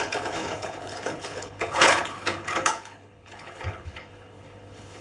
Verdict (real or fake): fake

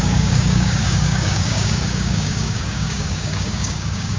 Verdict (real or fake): fake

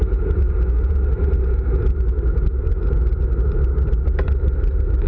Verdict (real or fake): real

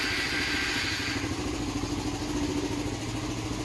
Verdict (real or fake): real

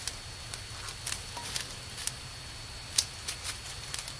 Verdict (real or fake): real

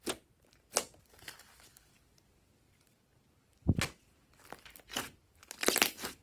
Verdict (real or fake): real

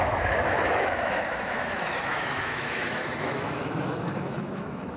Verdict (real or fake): fake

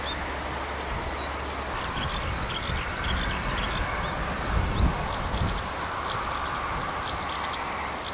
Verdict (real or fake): real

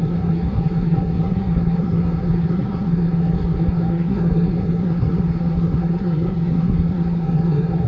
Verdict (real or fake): fake